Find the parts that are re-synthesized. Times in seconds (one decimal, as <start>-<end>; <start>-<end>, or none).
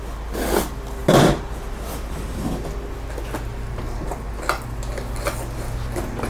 1.0-2.4; 3.5-4.3